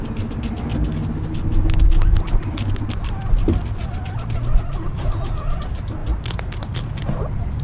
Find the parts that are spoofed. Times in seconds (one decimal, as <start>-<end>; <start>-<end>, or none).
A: none